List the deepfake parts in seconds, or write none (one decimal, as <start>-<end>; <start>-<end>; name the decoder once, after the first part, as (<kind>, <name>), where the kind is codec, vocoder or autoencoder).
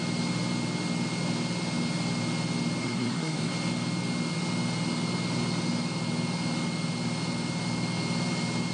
2.8-3.5 (codec, SNAC)